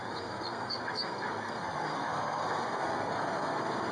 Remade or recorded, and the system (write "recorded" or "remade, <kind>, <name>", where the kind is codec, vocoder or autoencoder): remade, codec, SNAC